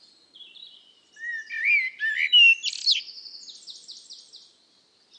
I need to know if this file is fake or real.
real